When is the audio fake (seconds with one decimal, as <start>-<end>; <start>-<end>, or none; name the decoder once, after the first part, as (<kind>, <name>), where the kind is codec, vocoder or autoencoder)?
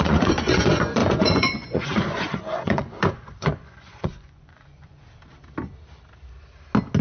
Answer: 0.0-5.0 (vocoder, Vocos)